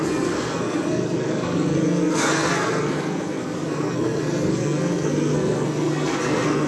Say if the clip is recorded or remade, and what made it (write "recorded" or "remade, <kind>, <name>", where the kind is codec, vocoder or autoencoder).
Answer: remade, codec, SNAC